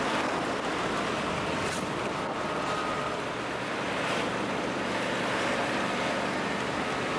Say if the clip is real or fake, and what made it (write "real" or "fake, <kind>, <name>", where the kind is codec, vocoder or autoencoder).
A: fake, vocoder, BigVGAN v2